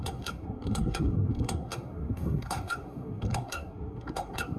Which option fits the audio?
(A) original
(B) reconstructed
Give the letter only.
B